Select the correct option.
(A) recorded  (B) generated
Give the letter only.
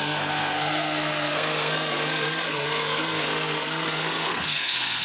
B